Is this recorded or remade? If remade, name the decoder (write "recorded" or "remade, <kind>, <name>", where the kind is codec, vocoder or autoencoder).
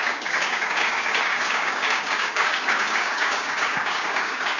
remade, codec, DAC